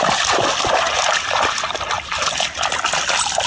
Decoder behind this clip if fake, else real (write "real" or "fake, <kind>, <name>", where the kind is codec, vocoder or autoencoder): real